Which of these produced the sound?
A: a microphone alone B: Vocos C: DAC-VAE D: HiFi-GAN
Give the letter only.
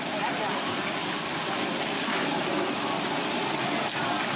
A